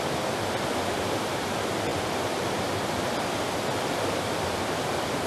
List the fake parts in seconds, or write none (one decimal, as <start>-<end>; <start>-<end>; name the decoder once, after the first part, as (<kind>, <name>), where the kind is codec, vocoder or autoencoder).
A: 1.9-2.5 (vocoder, BigVGAN v2)